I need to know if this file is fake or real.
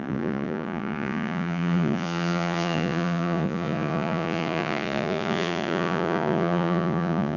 fake